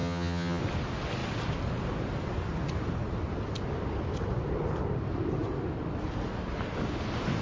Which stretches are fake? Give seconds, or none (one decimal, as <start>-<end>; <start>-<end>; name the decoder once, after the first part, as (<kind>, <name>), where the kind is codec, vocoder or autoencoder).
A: 0.0-0.6 (vocoder, HiFi-GAN)